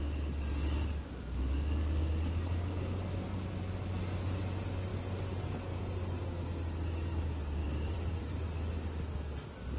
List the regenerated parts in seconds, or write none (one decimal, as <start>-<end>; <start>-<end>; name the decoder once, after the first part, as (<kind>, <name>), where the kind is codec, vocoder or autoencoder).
7.6-8.4 (vocoder, BigVGAN v2)